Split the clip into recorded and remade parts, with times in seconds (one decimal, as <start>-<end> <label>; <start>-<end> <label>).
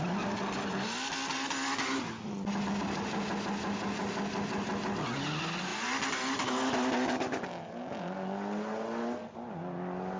0.0-10.2 recorded